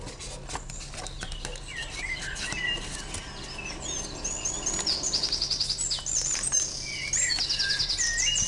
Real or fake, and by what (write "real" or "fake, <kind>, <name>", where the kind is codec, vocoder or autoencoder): real